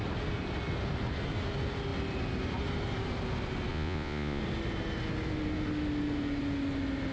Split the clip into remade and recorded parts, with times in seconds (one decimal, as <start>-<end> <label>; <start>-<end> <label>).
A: 0.0-3.7 recorded; 3.7-4.4 remade; 4.4-7.1 recorded

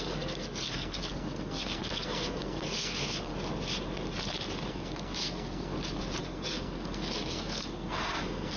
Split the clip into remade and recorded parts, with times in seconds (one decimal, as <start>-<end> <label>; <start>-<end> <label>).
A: 0.0-3.3 remade; 3.3-4.7 recorded; 4.7-5.7 remade; 5.7-6.2 recorded; 6.2-8.6 remade